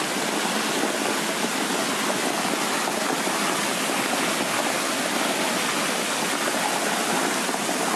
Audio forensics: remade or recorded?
recorded